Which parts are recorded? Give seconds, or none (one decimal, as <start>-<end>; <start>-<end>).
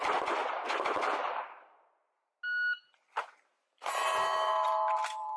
0.4-3.2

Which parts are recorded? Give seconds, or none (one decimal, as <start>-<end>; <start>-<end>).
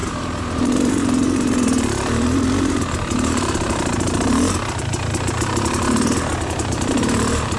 none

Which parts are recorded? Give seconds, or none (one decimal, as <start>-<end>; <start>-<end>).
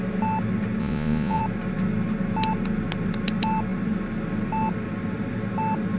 0.0-0.8; 1.4-6.0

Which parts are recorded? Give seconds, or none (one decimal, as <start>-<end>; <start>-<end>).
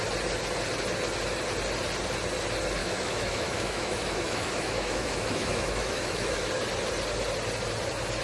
0.0-2.8; 6.5-8.2